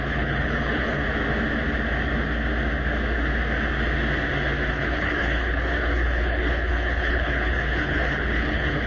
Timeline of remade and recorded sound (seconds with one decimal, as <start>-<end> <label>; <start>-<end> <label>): 0.0-1.0 remade; 1.0-4.7 recorded; 4.7-8.9 remade